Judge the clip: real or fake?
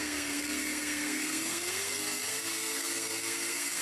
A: fake